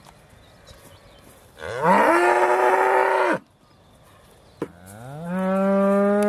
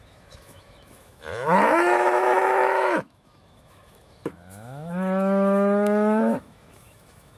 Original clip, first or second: first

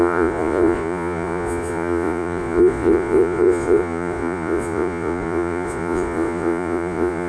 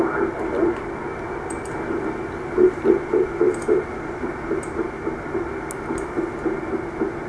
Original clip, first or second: second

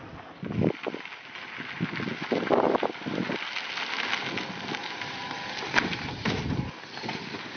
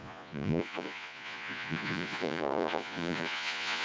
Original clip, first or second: first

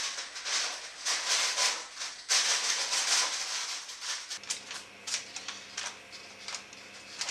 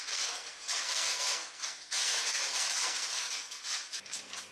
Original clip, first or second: first